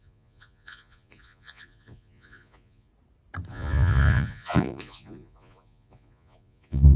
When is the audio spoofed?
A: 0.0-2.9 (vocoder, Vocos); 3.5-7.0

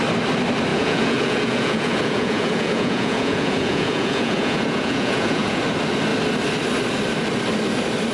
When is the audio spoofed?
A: 0.7-5.6 (vocoder, Vocos)

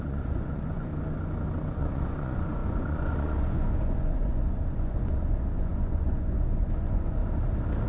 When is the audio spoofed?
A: 0.0-0.9 (vocoder, Vocos); 1.8-7.2

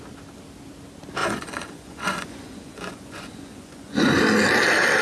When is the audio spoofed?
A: 1.2-4.2 (vocoder, Vocos)

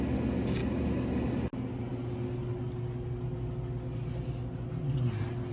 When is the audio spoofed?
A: none

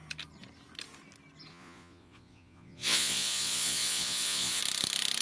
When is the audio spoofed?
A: 1.5-4.6 (vocoder, Vocos)

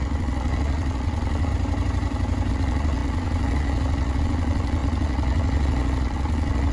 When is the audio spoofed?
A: 0.0-1.5 (vocoder, Vocos); 2.5-6.7